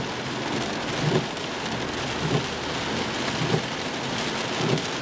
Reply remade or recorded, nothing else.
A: recorded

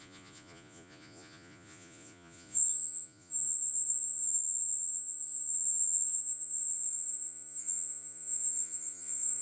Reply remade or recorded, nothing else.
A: remade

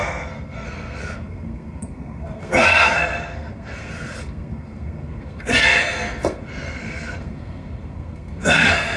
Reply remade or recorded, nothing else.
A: remade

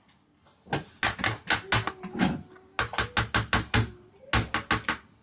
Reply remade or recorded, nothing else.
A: recorded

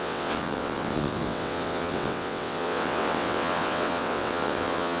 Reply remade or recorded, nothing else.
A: remade